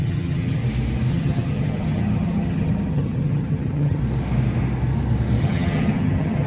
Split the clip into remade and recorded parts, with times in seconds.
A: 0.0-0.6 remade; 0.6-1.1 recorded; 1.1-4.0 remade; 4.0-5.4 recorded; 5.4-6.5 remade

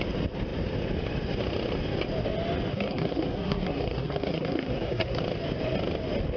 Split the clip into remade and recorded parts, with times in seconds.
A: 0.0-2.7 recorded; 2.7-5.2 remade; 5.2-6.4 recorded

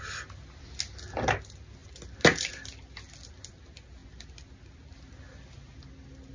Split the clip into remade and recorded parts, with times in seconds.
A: 0.0-6.3 recorded

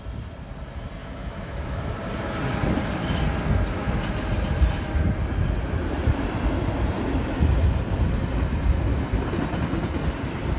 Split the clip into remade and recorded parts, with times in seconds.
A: 0.0-1.0 recorded; 1.0-1.8 remade; 1.8-10.6 recorded